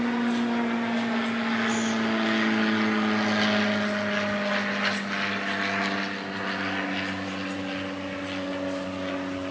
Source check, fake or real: real